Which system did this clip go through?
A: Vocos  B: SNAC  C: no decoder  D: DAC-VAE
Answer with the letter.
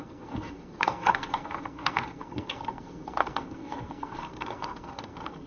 B